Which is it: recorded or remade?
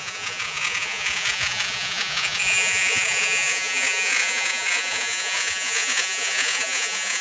remade